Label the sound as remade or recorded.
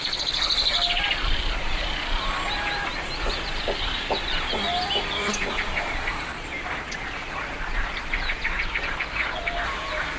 remade